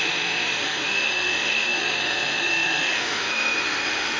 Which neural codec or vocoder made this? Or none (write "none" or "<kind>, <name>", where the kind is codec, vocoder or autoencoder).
autoencoder, DAC-VAE